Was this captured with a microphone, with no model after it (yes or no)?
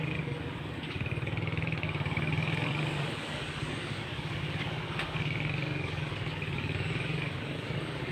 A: no